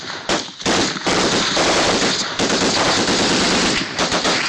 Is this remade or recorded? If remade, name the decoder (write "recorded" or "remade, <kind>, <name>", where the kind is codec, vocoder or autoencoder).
recorded